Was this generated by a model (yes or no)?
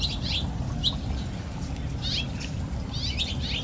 no